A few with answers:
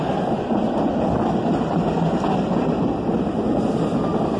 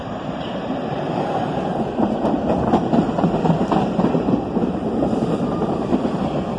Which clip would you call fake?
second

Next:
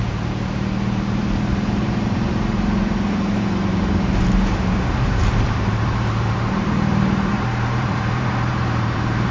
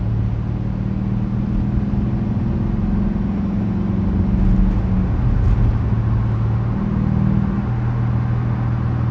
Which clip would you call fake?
first